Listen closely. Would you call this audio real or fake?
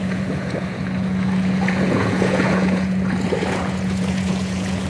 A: fake